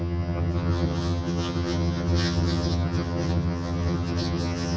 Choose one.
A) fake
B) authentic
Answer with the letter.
A